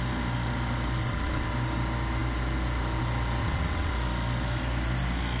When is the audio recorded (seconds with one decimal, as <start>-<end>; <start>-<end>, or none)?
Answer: 0.0-1.0; 1.5-3.4; 3.9-5.4